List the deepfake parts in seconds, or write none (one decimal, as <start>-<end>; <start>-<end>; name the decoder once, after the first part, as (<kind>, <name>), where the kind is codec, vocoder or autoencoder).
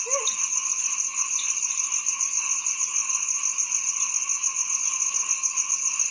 none